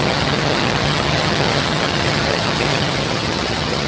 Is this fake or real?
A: fake